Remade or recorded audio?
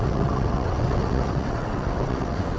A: remade